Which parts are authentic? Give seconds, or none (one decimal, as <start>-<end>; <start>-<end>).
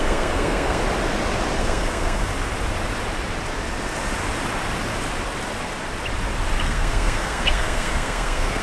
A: 0.8-1.6; 2.3-6.6